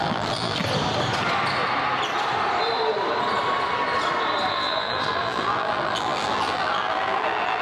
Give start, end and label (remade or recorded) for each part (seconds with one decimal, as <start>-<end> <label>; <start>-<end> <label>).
0.0-0.6 remade; 0.6-4.5 recorded; 4.5-7.6 remade